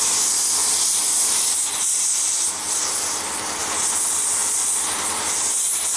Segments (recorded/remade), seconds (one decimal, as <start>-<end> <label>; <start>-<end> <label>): 0.0-0.6 recorded; 0.6-3.6 remade; 3.6-6.0 recorded